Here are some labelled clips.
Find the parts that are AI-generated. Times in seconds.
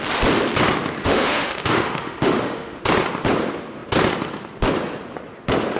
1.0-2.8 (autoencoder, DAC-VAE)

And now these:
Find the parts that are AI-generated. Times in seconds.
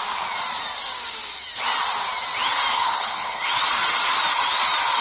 2.7-3.5 (codec, HILCodec)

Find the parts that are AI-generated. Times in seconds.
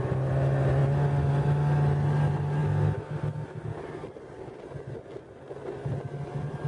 none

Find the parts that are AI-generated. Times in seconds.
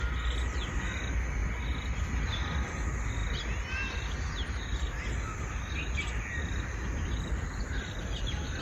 none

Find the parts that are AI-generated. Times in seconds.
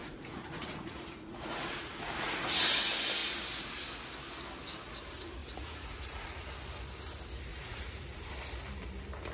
0.0-2.7 (vocoder, Vocos); 5.4-6.3; 7.5-8.3